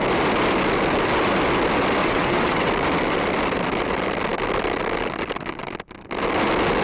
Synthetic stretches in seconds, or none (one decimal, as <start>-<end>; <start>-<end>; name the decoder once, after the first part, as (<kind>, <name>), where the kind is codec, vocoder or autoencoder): 2.0-2.7 (vocoder, WaveNeXt)